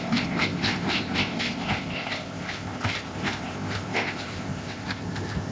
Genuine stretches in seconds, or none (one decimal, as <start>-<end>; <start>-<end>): none